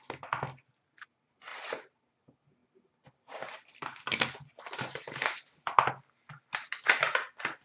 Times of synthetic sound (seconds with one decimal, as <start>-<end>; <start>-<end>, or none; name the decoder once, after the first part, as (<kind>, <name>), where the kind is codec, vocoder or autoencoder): none